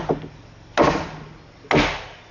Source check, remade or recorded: recorded